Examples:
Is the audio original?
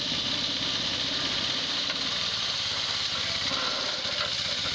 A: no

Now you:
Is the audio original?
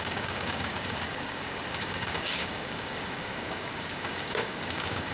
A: no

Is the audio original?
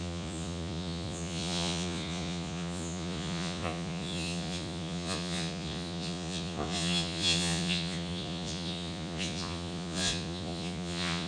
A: no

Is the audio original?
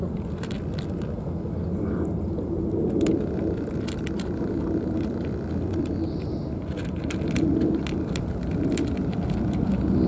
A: no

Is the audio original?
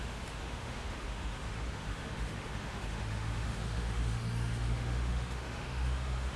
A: no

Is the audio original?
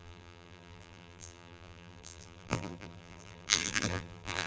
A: no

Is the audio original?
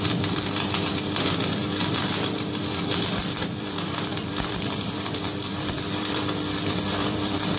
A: no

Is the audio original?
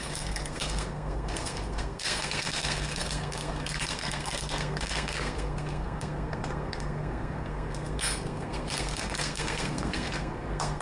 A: no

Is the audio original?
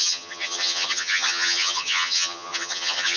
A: no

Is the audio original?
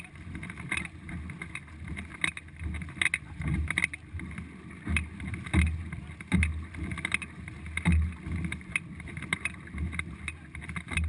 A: yes